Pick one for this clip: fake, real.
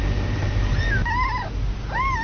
real